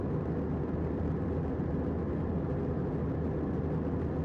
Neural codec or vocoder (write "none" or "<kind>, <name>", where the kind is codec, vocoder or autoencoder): none